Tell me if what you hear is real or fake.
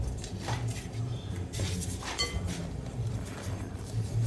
fake